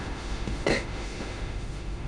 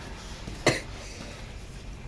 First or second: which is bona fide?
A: second